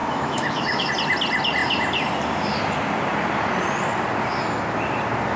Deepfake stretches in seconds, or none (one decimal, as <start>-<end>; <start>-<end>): 0.0-0.9